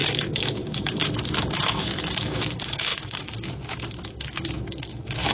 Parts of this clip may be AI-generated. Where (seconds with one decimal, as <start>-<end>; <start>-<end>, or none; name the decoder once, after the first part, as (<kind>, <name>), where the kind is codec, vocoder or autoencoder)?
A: 0.0-5.3 (autoencoder, DAC-VAE)